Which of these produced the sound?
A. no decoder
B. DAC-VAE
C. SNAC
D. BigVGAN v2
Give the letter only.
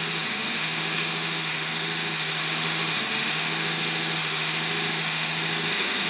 B